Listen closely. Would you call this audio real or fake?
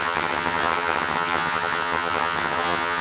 fake